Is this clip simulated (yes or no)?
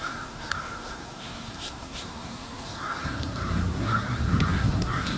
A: yes